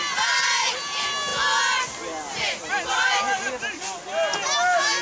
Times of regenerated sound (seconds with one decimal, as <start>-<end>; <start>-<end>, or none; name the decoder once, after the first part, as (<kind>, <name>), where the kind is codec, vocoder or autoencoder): none

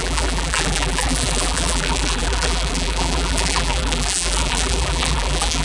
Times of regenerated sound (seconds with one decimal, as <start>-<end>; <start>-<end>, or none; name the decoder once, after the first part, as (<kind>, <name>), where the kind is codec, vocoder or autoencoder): 0.0-5.6 (vocoder, BigVGAN v2)